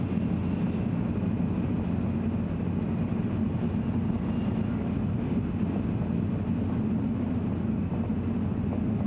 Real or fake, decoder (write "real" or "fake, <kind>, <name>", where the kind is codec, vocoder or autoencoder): real